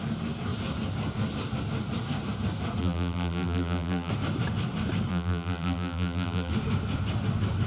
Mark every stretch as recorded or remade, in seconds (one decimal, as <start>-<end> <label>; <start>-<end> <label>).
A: 0.0-2.8 recorded; 2.8-4.1 remade; 4.1-5.1 recorded; 5.1-6.5 remade; 6.5-7.7 recorded